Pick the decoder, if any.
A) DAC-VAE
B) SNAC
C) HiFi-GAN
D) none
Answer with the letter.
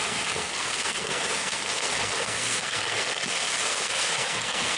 B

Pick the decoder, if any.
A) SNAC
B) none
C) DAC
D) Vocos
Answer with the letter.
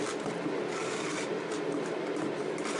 B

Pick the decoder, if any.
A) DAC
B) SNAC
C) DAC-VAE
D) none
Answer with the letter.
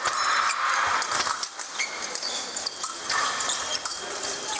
D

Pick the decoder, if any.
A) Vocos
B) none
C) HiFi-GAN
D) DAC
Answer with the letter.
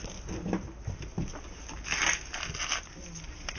B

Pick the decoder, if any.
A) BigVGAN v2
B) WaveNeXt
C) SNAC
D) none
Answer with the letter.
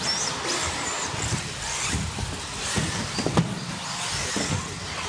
D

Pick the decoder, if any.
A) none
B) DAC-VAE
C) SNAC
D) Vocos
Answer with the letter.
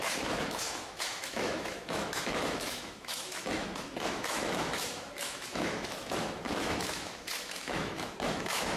B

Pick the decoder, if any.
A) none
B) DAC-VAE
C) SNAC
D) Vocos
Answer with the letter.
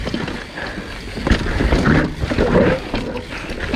A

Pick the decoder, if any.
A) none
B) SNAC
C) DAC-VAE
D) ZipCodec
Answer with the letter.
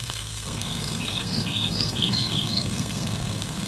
B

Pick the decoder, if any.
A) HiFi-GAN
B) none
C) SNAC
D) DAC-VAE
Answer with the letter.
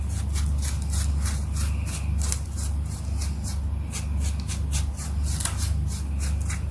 B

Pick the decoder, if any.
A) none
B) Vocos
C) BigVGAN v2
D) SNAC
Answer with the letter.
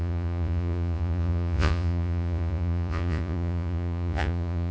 B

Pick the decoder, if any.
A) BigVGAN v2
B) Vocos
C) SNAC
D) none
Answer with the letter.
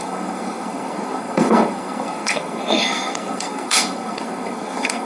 C